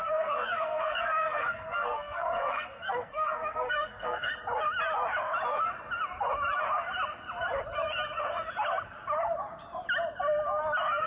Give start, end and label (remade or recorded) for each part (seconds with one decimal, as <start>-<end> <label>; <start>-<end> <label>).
0.0-4.3 remade; 4.3-11.1 recorded